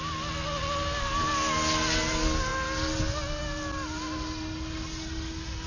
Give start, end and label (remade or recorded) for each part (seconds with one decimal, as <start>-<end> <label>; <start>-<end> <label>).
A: 0.0-5.7 recorded